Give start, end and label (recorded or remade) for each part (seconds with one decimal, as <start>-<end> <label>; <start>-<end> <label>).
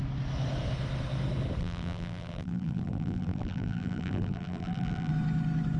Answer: 0.0-1.6 recorded; 1.6-5.1 remade; 5.1-5.8 recorded